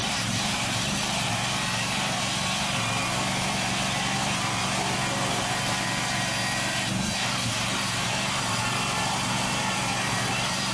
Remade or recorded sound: remade